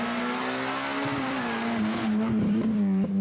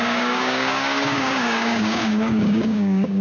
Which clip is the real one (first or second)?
first